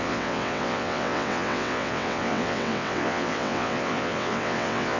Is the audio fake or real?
fake